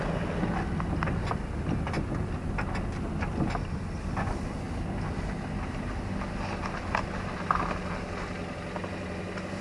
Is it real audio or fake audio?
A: real